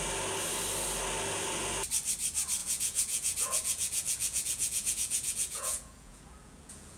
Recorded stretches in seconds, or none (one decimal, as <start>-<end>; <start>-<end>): 0.0-2.6